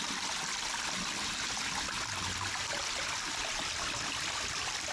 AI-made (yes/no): yes